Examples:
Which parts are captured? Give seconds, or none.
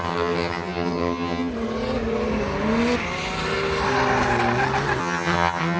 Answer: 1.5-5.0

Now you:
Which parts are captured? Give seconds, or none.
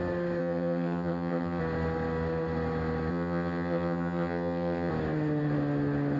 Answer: 0.0-0.4; 1.6-3.1; 4.9-6.2